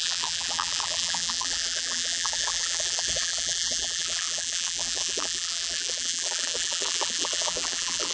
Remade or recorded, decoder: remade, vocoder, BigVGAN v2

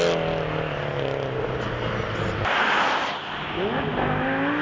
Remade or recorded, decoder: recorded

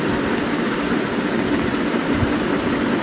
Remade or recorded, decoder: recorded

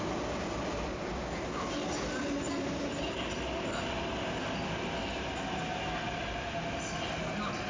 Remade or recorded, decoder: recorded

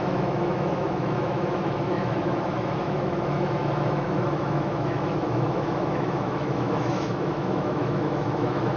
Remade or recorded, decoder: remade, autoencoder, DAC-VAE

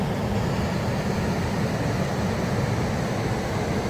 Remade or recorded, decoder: recorded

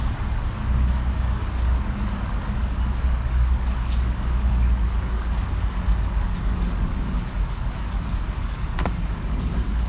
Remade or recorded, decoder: remade, codec, DAC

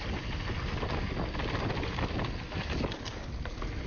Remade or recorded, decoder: recorded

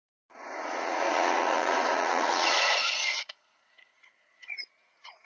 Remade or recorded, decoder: remade, vocoder, Vocos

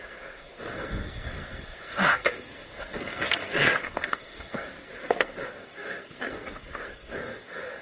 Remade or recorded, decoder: remade, codec, SNAC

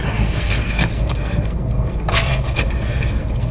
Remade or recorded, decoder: remade, codec, SNAC